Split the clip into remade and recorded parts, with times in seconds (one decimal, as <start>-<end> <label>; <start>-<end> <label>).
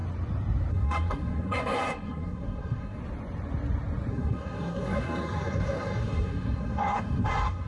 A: 0.0-0.7 recorded; 0.7-3.0 remade; 3.0-4.1 recorded; 4.1-7.7 remade